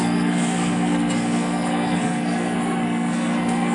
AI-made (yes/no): yes